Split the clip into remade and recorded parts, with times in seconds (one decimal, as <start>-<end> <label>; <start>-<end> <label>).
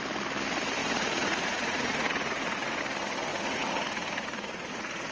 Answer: 0.0-0.8 recorded; 0.8-2.8 remade; 2.8-3.3 recorded; 3.3-5.1 remade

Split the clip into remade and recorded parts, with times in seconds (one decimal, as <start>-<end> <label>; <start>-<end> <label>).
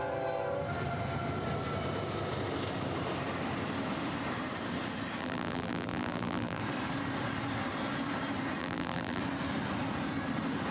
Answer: 0.0-5.2 recorded; 5.2-6.6 remade; 6.6-8.6 recorded; 8.6-9.2 remade; 9.2-10.7 recorded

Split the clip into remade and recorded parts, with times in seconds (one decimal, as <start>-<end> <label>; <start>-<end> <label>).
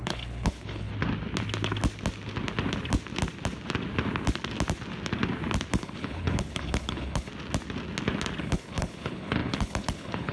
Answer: 0.0-0.9 remade; 0.9-5.7 recorded; 5.7-7.3 remade; 7.3-8.4 recorded; 8.4-10.3 remade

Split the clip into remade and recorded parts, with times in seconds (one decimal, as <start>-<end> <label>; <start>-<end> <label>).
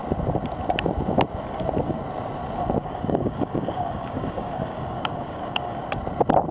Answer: 0.0-2.8 recorded; 2.8-5.8 remade; 5.8-6.5 recorded